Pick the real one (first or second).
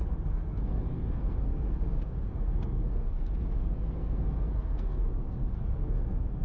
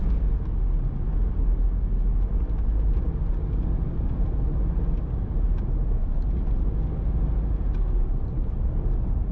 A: second